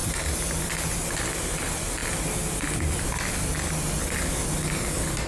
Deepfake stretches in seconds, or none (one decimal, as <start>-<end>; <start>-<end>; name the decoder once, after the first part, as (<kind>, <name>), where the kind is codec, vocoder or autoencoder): none